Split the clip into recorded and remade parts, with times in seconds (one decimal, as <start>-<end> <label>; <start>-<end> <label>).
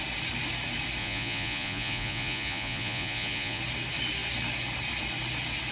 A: 0.0-1.0 recorded; 1.0-3.6 remade; 3.6-5.7 recorded